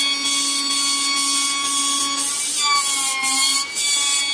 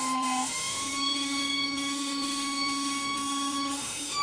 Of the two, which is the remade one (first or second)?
second